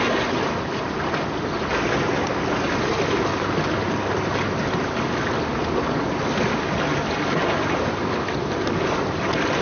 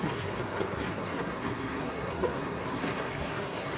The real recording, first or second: first